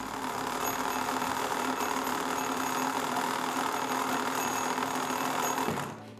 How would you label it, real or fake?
real